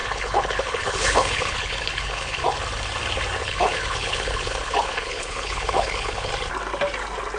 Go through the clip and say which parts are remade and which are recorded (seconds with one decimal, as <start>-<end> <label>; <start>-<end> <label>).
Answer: 0.0-2.4 remade; 2.4-3.4 recorded; 3.4-6.3 remade; 6.3-7.4 recorded